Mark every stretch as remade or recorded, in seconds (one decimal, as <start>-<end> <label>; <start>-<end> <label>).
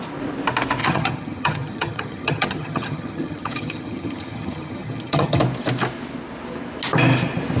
0.0-0.8 recorded; 0.8-5.4 remade; 5.4-7.6 recorded